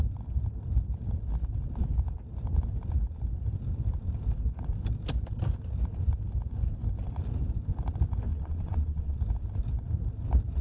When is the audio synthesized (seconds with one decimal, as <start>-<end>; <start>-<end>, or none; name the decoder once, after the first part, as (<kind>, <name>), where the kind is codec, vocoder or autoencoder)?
8.3-9.2 (vocoder, WaveNeXt)